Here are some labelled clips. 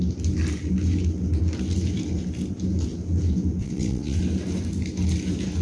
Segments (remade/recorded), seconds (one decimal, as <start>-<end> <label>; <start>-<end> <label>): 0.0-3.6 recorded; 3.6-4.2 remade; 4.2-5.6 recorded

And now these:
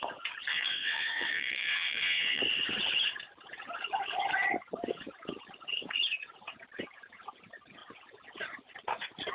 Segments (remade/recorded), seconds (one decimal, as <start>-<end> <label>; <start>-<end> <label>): 0.0-0.5 recorded; 0.5-2.4 remade; 2.4-9.3 recorded

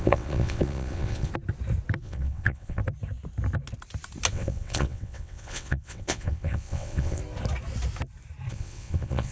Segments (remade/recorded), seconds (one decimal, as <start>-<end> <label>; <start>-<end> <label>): 0.0-1.3 remade; 1.3-2.0 recorded; 2.0-2.8 remade; 2.8-4.3 recorded; 4.3-7.2 remade; 7.2-8.5 recorded; 8.5-9.3 remade